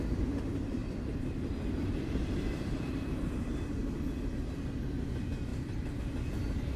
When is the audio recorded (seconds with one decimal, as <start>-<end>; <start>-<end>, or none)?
0.0-0.8; 2.9-5.5; 6.0-6.8